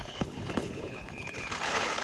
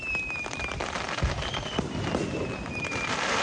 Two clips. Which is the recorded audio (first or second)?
second